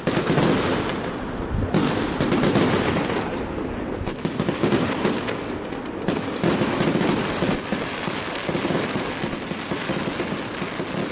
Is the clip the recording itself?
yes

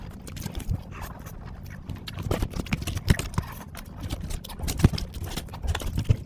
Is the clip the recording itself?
yes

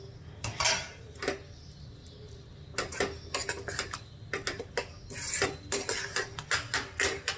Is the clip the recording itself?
yes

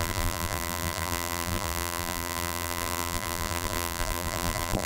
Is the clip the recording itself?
no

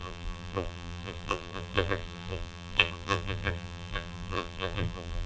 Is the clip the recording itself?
no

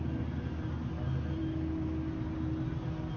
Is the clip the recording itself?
yes